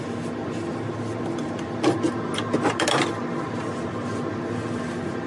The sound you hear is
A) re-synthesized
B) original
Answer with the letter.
B